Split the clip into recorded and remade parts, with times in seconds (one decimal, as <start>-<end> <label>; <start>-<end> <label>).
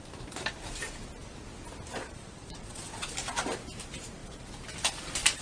0.0-2.0 recorded; 2.0-3.1 remade; 3.1-5.4 recorded